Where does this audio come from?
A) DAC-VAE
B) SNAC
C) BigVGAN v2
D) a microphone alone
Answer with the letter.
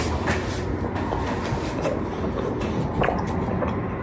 D